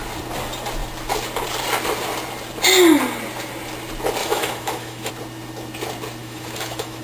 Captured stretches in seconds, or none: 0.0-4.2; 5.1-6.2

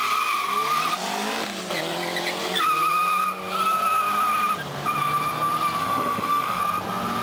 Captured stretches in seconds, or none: 0.0-5.8; 6.6-7.2

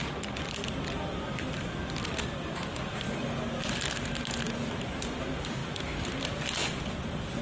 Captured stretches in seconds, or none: 0.0-7.4

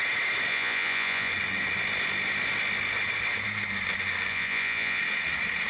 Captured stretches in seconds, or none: 0.0-0.5; 1.3-4.3; 5.0-5.7

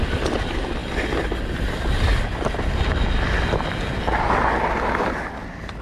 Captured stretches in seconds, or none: 0.0-5.8

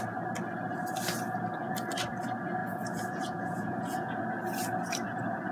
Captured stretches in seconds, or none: 0.0-2.6; 4.2-5.5

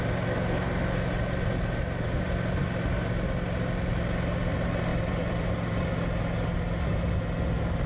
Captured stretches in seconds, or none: 0.0-4.9; 5.8-7.9